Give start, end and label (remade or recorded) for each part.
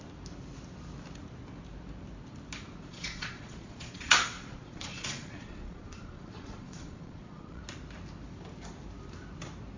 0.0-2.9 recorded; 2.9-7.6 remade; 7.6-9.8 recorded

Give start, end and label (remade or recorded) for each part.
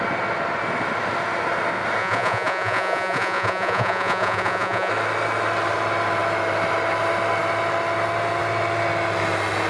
0.0-2.0 recorded; 2.0-4.9 remade; 4.9-9.7 recorded